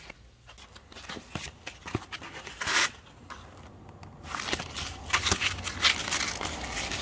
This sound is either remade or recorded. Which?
recorded